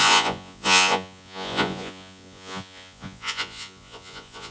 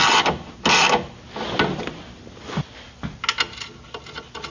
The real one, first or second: second